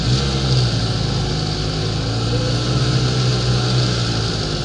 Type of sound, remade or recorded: recorded